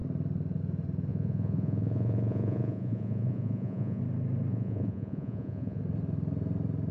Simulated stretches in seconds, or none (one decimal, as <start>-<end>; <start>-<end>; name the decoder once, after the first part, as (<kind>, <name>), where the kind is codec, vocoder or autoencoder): 1.1-4.0 (vocoder, Vocos); 4.5-5.8